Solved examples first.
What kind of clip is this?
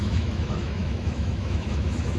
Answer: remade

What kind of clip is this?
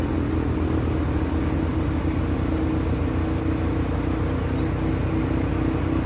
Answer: recorded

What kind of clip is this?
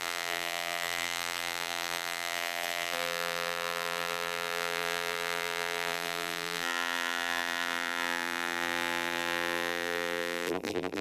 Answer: remade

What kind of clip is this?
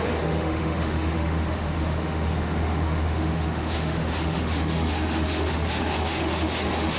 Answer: remade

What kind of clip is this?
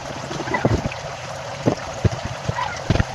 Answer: remade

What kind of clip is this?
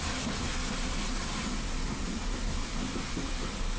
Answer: recorded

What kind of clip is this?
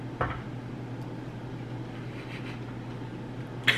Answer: recorded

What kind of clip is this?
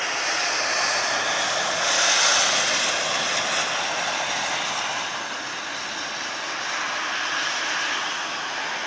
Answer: recorded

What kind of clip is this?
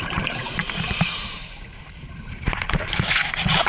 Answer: remade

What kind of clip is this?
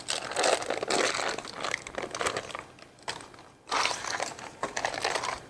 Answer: recorded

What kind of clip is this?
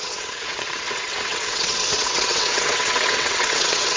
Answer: remade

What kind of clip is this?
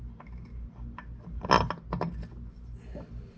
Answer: recorded